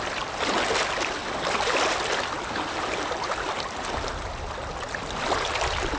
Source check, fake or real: real